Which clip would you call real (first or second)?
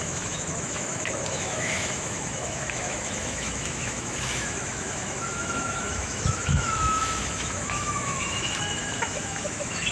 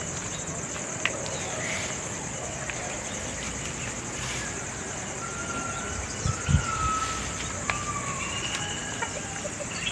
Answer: second